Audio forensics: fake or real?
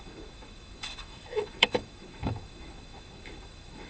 fake